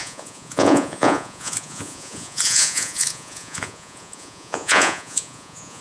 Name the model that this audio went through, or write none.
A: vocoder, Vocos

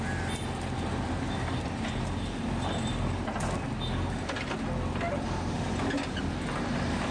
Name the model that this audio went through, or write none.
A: none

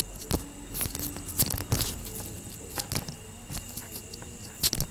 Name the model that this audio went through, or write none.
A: none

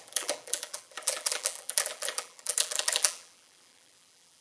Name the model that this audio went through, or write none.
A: vocoder, BigVGAN v2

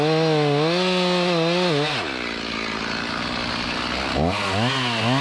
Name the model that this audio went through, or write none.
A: none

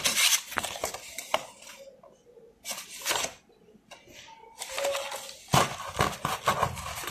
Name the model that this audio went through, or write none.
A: none